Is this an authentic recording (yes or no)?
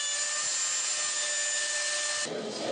yes